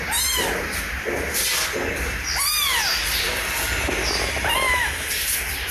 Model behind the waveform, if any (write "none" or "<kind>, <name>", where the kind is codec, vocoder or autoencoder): none